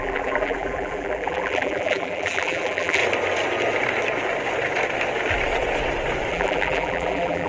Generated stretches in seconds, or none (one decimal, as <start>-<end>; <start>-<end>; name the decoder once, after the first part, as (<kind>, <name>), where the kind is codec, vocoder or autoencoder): 0.0-3.0 (vocoder, BigVGAN v2); 6.3-7.5

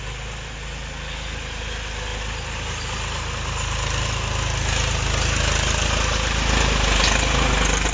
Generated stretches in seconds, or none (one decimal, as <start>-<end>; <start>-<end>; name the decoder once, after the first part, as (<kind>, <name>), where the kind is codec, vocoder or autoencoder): none

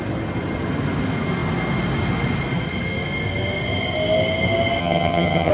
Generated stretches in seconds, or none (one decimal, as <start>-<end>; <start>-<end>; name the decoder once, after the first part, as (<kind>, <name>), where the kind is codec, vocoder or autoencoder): 4.8-5.5 (vocoder, HiFi-GAN)

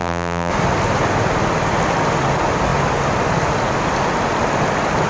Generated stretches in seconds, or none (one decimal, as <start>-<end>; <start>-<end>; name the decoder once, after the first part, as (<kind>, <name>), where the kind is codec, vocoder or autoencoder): 0.0-0.5 (vocoder, BigVGAN v2)